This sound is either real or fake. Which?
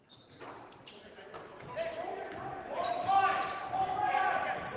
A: real